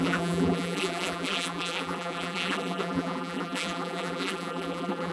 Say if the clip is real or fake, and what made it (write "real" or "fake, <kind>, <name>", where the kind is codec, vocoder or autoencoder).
fake, vocoder, BigVGAN v2